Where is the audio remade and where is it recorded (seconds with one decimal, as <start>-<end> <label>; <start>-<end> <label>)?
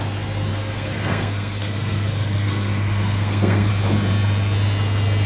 0.0-0.5 recorded; 0.5-3.7 remade; 3.7-5.3 recorded